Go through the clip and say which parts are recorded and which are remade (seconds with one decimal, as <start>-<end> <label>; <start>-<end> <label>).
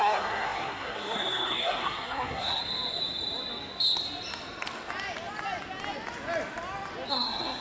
0.0-2.6 remade; 2.6-7.1 recorded; 7.1-7.6 remade